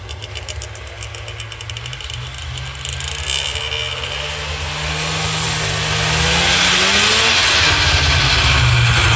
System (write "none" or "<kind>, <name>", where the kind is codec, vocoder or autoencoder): none